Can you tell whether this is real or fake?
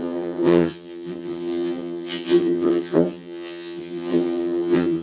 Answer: fake